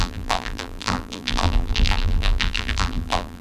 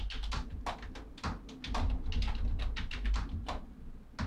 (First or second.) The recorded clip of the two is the second